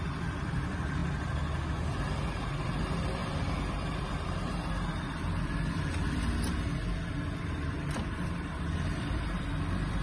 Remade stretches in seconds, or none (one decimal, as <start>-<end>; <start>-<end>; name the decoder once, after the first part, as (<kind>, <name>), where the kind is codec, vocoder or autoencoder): 0.0-1.0 (vocoder, BigVGAN v2); 2.6-10.0